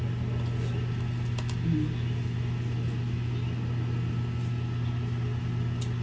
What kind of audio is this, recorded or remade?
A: recorded